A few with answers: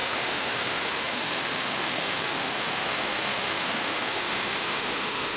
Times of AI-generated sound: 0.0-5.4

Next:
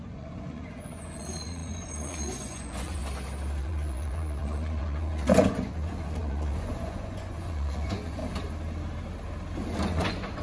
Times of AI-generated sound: 0.0-3.0; 3.6-8.2; 9.8-10.4

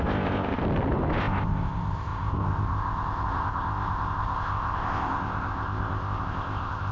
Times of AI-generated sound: 0.0-0.6; 1.2-6.9

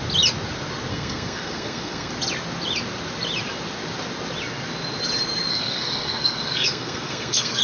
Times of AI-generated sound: 0.9-2.1; 5.5-7.6

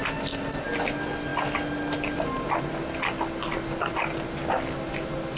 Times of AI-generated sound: none